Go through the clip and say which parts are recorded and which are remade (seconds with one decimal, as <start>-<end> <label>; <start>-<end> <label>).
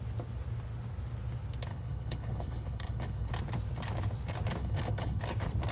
0.0-1.7 recorded; 1.7-3.3 remade; 3.3-4.6 recorded; 4.6-5.2 remade; 5.2-5.7 recorded